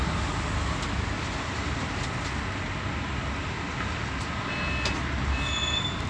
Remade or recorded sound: recorded